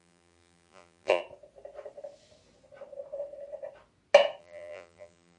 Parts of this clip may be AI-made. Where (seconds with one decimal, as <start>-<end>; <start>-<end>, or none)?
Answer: 0.0-1.2; 4.4-5.4